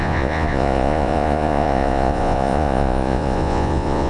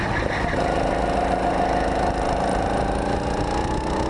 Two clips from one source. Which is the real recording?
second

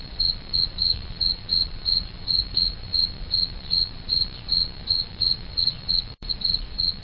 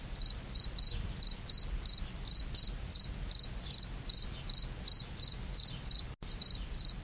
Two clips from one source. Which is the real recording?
second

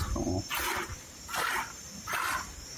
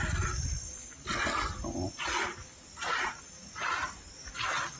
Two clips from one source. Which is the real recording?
second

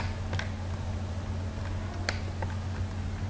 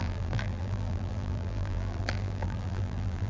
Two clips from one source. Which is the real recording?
first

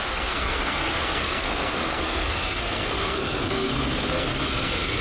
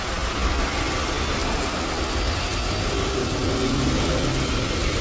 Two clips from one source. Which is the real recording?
second